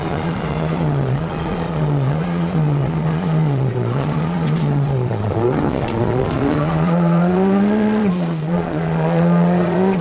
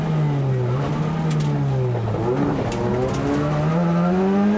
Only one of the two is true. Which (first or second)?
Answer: second